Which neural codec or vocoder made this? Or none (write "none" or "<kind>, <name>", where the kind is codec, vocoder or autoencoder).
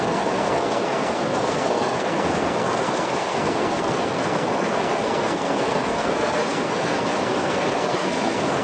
codec, SNAC